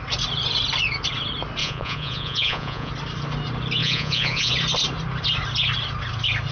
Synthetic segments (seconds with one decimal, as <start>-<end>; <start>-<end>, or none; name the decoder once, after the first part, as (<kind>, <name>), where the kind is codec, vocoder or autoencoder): 1.6-2.9 (vocoder, Vocos); 3.8-4.5